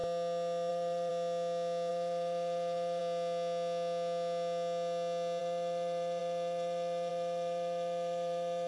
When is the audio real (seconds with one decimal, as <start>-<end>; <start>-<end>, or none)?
0.0-0.7; 1.1-1.9; 3.0-5.4